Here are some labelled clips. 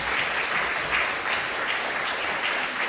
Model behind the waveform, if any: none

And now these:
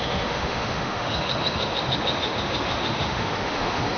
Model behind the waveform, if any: autoencoder, DAC-VAE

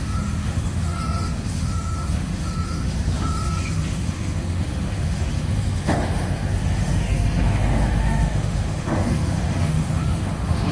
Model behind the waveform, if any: autoencoder, DAC-VAE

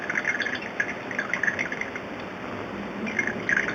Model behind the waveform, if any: none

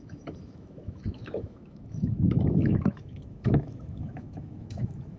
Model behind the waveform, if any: autoencoder, DAC-VAE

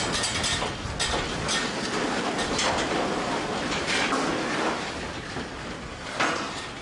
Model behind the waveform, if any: none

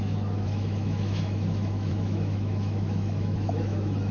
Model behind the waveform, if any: autoencoder, DAC-VAE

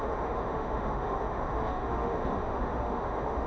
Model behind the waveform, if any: autoencoder, DAC-VAE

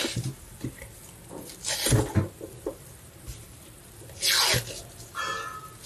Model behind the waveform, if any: none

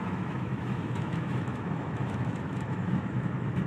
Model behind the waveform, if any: autoencoder, DAC-VAE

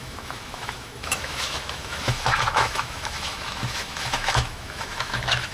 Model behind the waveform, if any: autoencoder, DAC-VAE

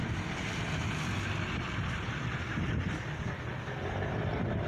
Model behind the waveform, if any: none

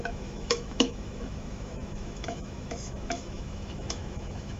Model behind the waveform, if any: autoencoder, DAC-VAE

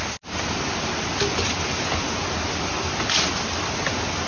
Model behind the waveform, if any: none